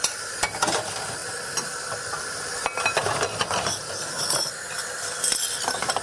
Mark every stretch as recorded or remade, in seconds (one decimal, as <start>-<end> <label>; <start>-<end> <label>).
0.0-6.0 recorded